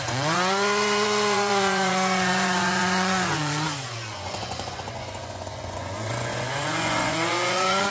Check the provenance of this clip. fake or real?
fake